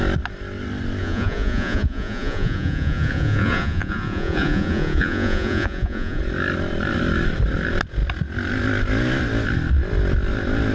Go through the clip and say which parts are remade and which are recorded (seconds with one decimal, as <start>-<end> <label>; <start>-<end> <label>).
0.0-1.0 recorded; 1.0-6.2 remade; 6.2-10.7 recorded